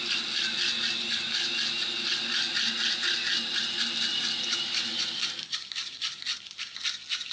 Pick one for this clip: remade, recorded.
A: recorded